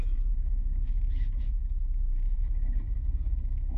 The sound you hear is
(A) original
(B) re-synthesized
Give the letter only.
B